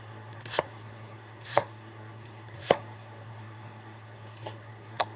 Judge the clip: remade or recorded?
remade